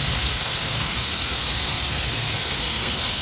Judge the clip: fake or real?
fake